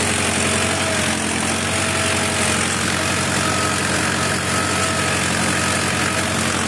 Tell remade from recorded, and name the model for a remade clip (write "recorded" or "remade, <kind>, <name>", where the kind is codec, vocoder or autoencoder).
recorded